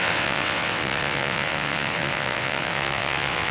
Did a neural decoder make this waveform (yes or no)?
yes